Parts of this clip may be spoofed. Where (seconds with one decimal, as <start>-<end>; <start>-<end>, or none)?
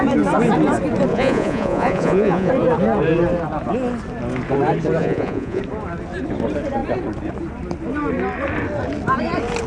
1.1-2.5; 5.0-5.6